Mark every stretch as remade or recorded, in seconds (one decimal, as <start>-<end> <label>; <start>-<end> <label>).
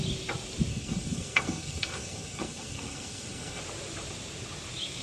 0.0-0.7 recorded; 0.7-3.6 remade; 3.6-5.0 recorded